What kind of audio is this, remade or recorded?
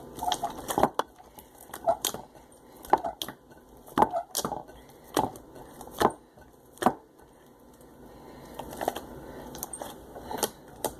recorded